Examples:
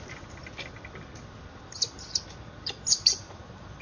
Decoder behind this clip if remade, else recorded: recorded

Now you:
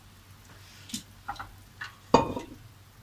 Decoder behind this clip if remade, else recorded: recorded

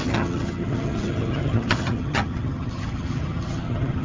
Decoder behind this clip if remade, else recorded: remade, vocoder, HiFi-GAN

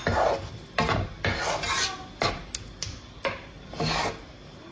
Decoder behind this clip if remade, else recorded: recorded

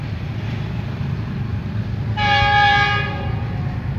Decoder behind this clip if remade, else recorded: recorded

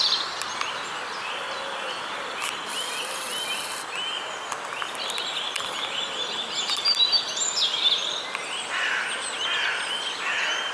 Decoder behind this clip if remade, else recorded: recorded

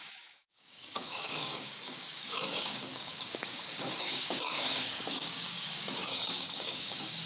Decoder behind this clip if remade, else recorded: remade, codec, DAC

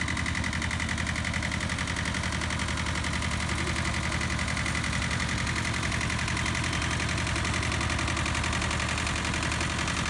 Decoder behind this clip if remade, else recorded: recorded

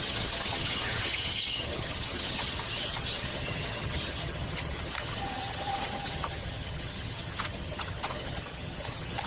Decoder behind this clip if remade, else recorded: remade, vocoder, HiFi-GAN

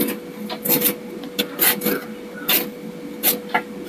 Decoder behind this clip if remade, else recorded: recorded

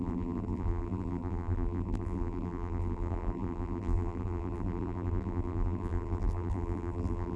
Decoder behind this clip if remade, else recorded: remade, vocoder, BigVGAN v2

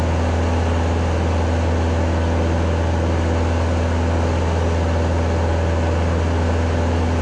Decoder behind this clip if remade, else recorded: recorded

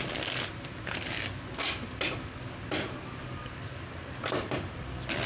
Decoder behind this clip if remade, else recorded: recorded